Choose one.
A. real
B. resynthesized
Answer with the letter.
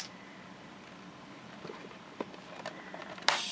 A